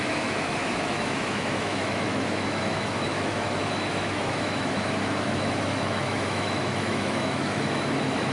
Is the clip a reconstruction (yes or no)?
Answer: yes